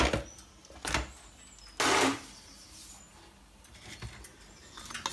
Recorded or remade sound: recorded